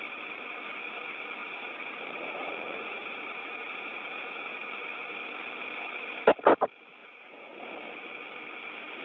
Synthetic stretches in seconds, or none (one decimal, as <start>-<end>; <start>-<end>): 1.4-4.7; 7.0-7.7